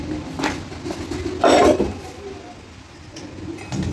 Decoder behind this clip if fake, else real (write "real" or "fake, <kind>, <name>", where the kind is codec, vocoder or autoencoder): real